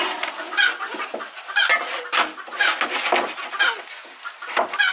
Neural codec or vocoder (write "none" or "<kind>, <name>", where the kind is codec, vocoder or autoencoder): none